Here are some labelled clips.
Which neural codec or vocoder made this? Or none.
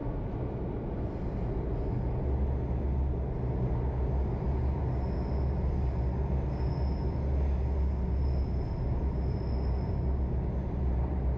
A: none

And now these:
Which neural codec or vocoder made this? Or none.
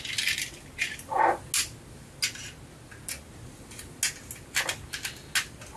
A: none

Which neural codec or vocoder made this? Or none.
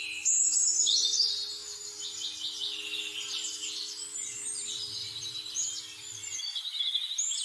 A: none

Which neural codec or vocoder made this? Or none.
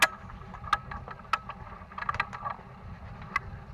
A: none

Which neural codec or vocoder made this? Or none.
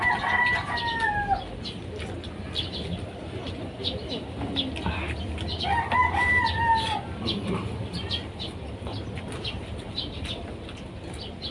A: none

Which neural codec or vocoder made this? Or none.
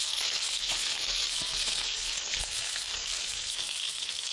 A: codec, SNAC